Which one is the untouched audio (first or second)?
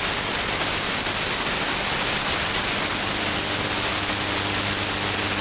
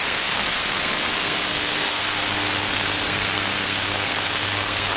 first